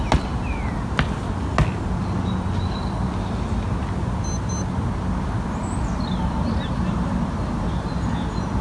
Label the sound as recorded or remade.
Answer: recorded